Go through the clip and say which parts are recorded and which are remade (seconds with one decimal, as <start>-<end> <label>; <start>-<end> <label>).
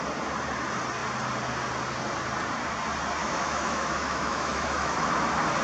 0.0-3.2 recorded; 3.2-5.1 remade; 5.1-5.6 recorded